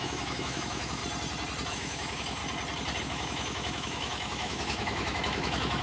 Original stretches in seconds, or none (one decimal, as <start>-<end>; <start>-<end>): 1.0-1.7; 2.4-3.0